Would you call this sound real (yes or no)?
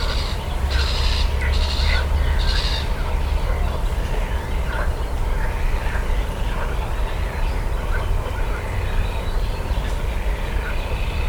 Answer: yes